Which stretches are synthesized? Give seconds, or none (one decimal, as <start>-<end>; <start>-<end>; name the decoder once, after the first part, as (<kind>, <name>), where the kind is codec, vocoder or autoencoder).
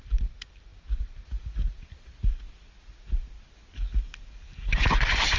0.0-0.7 (vocoder, BigVGAN v2); 1.5-2.1; 4.5-5.4